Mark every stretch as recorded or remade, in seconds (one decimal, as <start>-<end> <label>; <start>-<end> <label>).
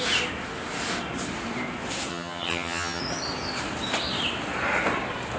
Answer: 0.0-2.1 recorded; 2.1-3.0 remade; 3.0-5.4 recorded